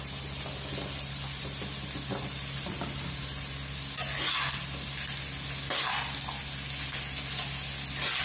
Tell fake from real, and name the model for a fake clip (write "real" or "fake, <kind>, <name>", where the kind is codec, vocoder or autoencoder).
real